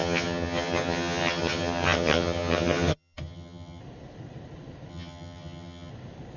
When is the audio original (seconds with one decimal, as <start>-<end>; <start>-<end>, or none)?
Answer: 3.8-4.9; 5.9-6.4